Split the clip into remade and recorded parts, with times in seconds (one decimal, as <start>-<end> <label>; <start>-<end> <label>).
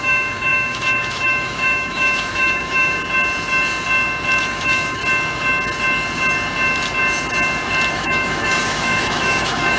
0.0-3.0 remade; 3.0-4.4 recorded; 4.4-5.0 remade; 5.0-7.9 recorded; 7.9-9.8 remade